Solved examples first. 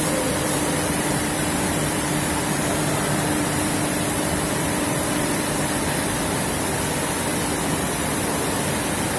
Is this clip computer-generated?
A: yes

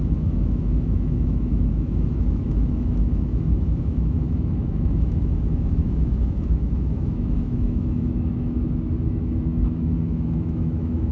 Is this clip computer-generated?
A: yes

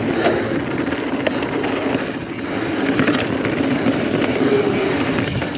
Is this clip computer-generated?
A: no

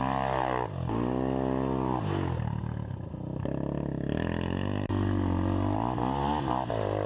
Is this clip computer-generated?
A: no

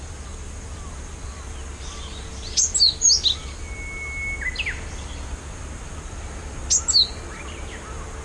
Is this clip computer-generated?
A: no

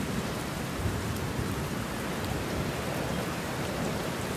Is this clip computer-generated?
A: yes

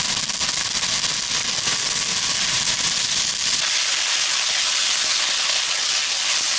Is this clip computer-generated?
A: no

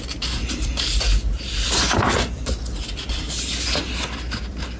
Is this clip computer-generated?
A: no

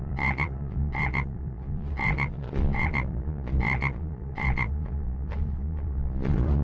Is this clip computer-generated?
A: yes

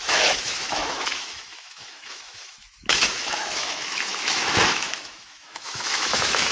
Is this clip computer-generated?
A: yes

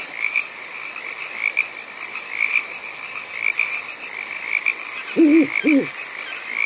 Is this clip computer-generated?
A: no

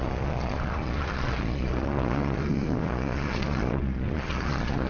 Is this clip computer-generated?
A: yes